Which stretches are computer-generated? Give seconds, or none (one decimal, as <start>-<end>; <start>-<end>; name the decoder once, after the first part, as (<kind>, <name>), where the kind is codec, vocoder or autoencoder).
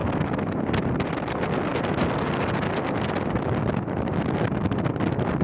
none